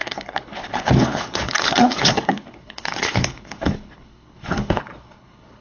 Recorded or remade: remade